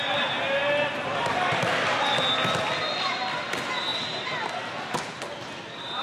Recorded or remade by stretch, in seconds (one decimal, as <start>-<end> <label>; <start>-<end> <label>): 0.0-6.0 recorded